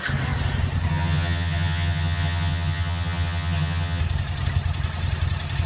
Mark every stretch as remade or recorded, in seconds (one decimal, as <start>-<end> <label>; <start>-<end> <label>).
0.0-0.9 recorded; 0.9-4.0 remade; 4.0-5.7 recorded

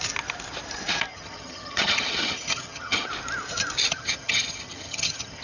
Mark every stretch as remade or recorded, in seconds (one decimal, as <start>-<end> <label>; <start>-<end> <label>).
0.0-1.1 recorded; 1.1-3.1 remade; 3.1-3.9 recorded; 3.9-5.4 remade

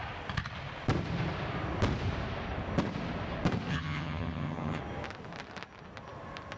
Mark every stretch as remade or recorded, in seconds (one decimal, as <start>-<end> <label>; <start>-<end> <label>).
0.0-3.7 recorded; 3.7-4.8 remade; 4.8-6.6 recorded